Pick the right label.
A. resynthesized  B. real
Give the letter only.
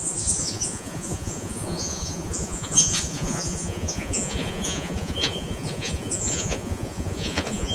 A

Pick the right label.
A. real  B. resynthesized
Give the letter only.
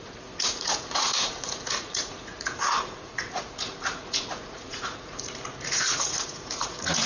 B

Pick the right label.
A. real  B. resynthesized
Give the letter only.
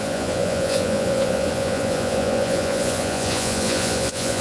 B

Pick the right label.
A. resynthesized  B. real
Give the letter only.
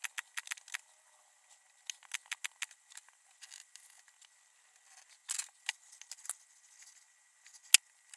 B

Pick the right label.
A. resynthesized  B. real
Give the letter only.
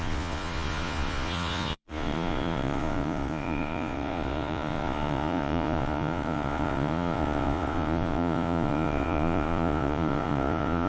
A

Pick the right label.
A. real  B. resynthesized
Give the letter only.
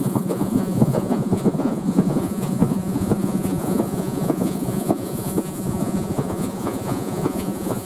B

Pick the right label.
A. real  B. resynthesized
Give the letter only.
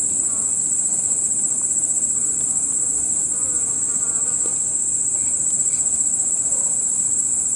A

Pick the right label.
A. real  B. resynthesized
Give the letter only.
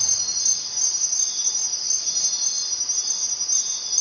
A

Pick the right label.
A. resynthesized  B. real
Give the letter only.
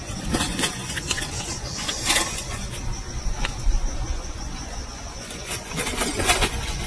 A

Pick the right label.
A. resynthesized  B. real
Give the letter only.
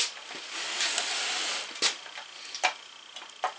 B